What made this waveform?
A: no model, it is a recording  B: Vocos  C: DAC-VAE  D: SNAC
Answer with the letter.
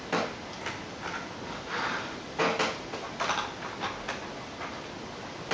A